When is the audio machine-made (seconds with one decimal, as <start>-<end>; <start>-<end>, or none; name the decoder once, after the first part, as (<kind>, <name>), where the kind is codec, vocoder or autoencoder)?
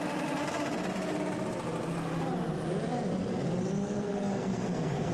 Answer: 3.8-5.1 (codec, SNAC)